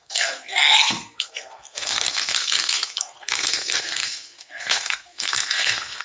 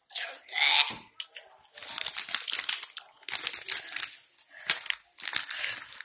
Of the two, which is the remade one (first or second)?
first